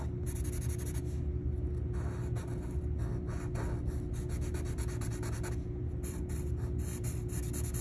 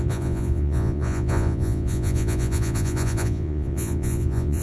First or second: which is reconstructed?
second